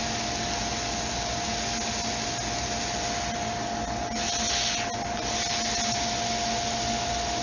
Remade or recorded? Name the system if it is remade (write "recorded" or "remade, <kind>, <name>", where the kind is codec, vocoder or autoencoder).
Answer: recorded